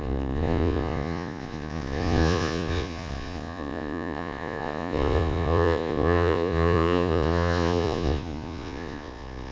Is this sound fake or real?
fake